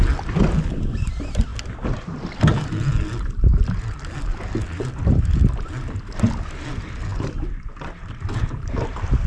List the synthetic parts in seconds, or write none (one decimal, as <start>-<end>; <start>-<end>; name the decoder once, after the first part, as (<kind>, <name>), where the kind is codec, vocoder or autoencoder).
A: none